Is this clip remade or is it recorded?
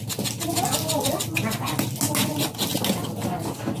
recorded